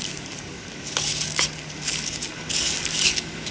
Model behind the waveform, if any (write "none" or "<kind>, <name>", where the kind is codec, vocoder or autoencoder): codec, DAC